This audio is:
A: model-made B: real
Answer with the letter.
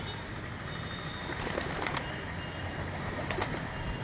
B